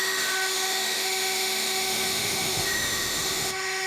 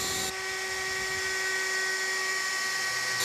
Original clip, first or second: second